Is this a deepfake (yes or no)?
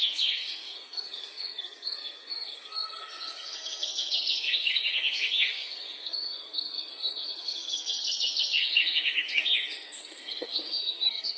yes